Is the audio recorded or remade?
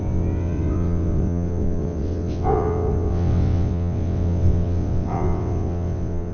remade